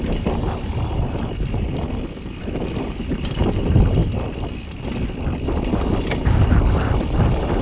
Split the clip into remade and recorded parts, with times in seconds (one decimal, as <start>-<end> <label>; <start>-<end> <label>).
0.0-7.6 recorded